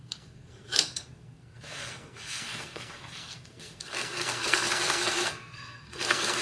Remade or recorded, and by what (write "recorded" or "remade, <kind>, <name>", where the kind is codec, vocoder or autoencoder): remade, codec, SNAC